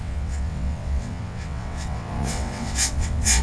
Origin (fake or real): fake